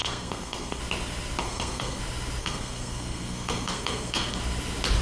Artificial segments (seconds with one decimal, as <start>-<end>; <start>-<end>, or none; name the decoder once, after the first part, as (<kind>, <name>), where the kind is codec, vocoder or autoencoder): 0.0-0.8 (codec, SNAC); 1.4-2.0; 2.4-4.4